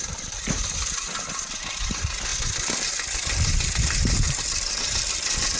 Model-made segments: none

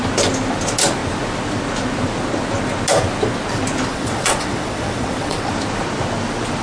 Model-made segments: 3.9-5.5 (vocoder, WaveNeXt)

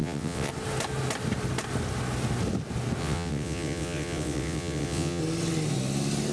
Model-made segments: 0.0-0.5 (vocoder, WaveNeXt); 3.0-5.2

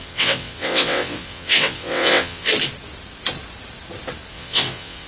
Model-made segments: 0.0-2.5 (vocoder, WaveNeXt); 4.3-5.1

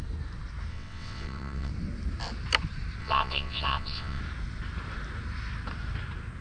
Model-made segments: 0.7-1.7 (vocoder, WaveNeXt); 3.0-4.2

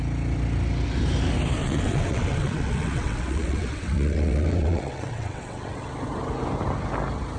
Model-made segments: 1.6-5.9 (vocoder, WaveNeXt)

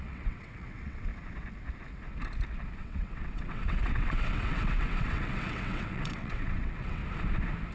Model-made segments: 0.0-1.1 (vocoder, WaveNeXt); 2.8-7.0

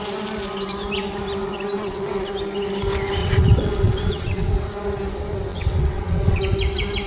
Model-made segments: 1.7-2.2 (vocoder, WaveNeXt); 3.2-4.5; 5.5-6.4